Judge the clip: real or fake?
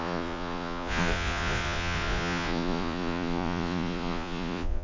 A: fake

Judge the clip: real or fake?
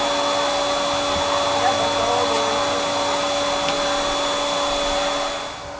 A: real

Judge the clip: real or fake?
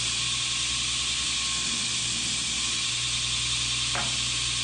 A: real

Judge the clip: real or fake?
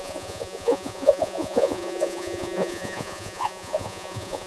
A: fake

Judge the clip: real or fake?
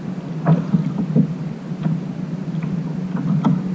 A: real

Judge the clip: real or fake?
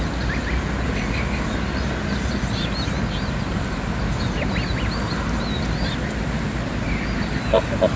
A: real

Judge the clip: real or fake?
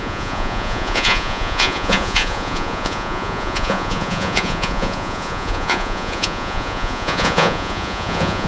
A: fake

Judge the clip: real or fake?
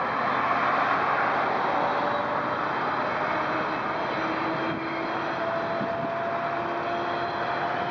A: real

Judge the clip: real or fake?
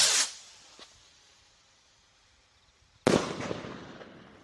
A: real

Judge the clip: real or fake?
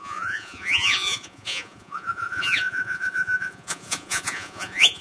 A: fake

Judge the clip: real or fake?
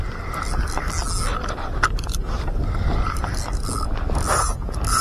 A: real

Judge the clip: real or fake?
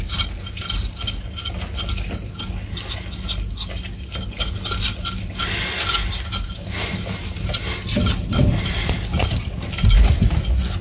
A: real